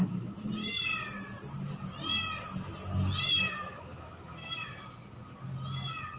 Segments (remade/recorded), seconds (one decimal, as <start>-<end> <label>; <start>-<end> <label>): 0.0-0.9 remade; 0.9-3.3 recorded; 3.3-4.6 remade; 4.6-6.2 recorded